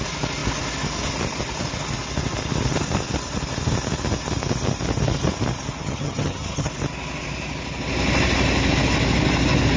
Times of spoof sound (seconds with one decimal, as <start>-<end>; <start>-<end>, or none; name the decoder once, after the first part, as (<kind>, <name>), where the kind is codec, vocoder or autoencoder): 5.8-6.7 (vocoder, HiFi-GAN)